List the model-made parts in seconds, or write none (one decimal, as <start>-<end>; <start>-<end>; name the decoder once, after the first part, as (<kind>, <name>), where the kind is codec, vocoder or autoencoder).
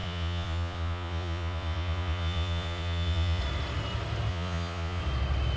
0.0-3.4 (vocoder, Vocos); 4.3-5.0